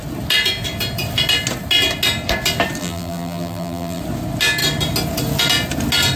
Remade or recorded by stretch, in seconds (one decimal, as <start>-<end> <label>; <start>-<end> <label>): 0.0-2.8 recorded; 2.8-4.0 remade; 4.0-6.2 recorded